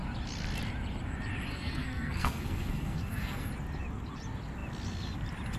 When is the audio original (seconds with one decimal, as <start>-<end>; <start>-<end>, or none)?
0.0-1.5; 3.5-5.6